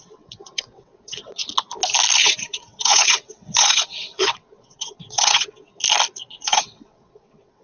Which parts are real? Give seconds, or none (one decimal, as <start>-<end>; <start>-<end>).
1.4-2.2; 5.7-6.3